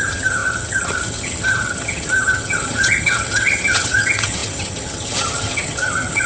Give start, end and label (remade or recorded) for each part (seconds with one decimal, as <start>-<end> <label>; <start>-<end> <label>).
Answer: 0.0-6.3 remade